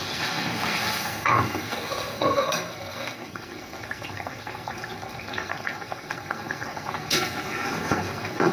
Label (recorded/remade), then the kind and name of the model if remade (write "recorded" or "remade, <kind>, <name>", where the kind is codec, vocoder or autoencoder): remade, codec, SNAC